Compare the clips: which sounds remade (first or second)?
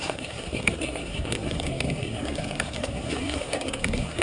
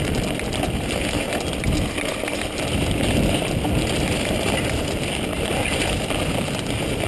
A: first